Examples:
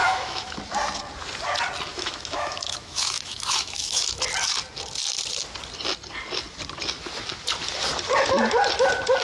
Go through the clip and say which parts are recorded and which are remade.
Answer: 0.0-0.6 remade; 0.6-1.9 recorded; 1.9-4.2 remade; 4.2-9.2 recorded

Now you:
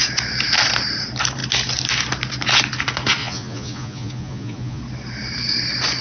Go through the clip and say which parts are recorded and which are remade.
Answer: 0.0-3.2 recorded; 3.2-4.8 remade; 4.8-6.0 recorded

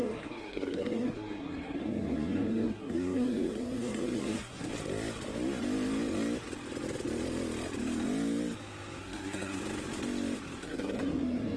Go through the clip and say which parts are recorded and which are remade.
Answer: 0.0-4.7 remade; 4.7-9.0 recorded; 9.0-9.6 remade; 9.6-10.6 recorded; 10.6-11.6 remade

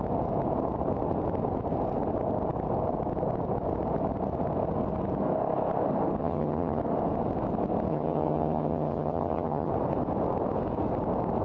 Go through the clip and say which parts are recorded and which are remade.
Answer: 0.0-6.2 recorded; 6.2-6.8 remade; 6.8-7.9 recorded; 7.9-9.7 remade; 9.7-11.4 recorded

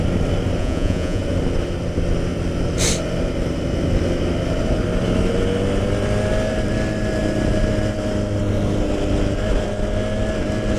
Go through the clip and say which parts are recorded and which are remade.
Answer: 0.0-0.6 recorded; 0.6-1.2 remade; 1.2-10.8 recorded

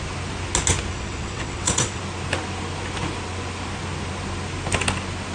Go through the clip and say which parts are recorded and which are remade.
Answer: 0.0-0.9 recorded; 0.9-2.0 remade; 2.0-5.3 recorded

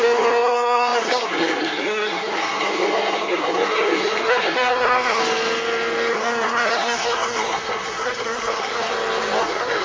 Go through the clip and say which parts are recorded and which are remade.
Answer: 0.0-5.2 remade; 5.2-6.1 recorded; 6.1-8.9 remade; 8.9-9.4 recorded; 9.4-9.8 remade

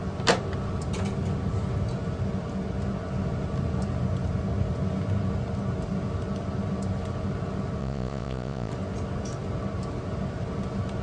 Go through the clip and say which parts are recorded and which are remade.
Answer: 0.0-7.8 recorded; 7.8-8.7 remade; 8.7-11.0 recorded